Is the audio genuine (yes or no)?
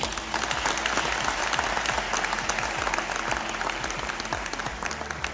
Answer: yes